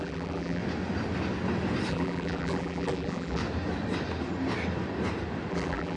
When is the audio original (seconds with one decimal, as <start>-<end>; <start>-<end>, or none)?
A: 0.6-1.9; 3.4-5.5